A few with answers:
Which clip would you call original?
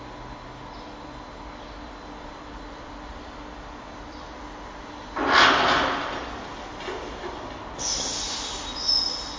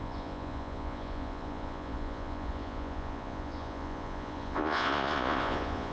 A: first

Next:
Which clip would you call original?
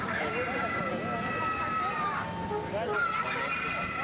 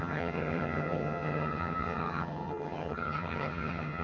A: first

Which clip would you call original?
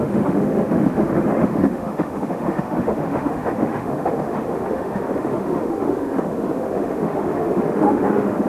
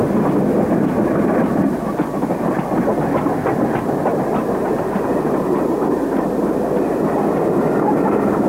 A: second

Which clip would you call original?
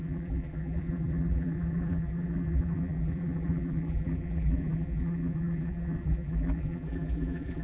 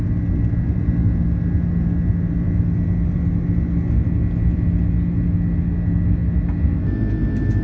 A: second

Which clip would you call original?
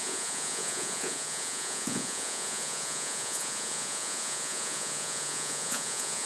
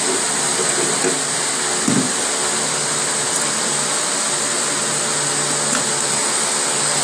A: second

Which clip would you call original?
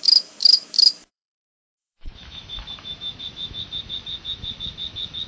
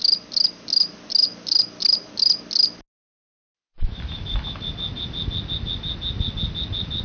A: second